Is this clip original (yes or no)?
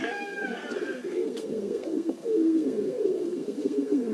no